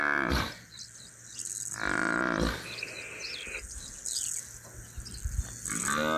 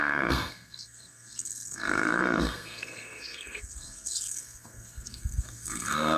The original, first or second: first